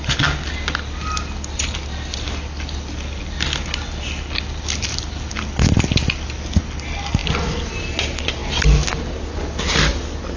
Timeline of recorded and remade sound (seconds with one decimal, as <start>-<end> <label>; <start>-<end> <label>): 0.0-7.2 recorded; 7.2-7.8 remade; 7.8-8.4 recorded; 8.4-9.0 remade; 9.0-10.4 recorded